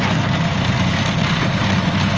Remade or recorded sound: recorded